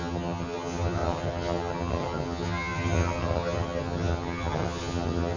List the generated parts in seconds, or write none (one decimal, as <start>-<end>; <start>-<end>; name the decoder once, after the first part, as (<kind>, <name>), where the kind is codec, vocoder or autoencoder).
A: 0.0-5.4 (vocoder, HiFi-GAN)

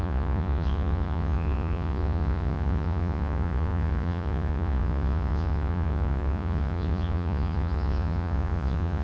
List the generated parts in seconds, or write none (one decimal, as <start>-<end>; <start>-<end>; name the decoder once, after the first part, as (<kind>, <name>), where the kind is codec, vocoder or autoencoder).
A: 0.0-9.0 (vocoder, Vocos)

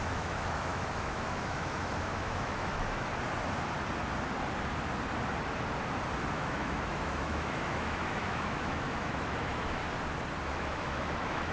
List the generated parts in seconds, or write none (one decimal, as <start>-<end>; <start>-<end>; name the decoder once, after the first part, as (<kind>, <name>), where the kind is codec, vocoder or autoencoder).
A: 0.0-3.1 (autoencoder, DAC-VAE); 6.3-9.8; 10.4-11.5

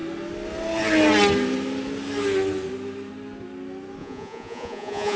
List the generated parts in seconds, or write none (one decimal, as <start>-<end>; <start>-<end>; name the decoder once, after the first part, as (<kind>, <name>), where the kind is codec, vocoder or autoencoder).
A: 4.0-5.2 (vocoder, Vocos)

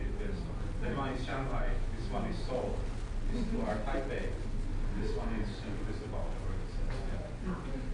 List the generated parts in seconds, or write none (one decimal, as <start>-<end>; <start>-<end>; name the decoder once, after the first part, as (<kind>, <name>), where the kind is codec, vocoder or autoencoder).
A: 1.3-2.5 (autoencoder, DAC-VAE)